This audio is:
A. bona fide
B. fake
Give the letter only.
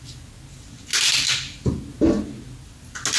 A